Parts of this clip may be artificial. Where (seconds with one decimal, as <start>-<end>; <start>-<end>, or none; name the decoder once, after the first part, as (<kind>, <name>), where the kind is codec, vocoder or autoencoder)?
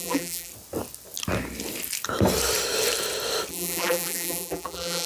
0.0-0.5 (vocoder, BigVGAN v2); 3.5-5.1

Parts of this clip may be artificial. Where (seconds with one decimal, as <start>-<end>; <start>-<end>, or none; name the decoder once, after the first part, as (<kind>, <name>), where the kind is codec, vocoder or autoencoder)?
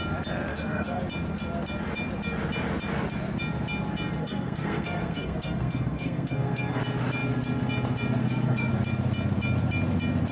0.5-1.0 (codec, SNAC); 4.2-6.8; 8.2-8.7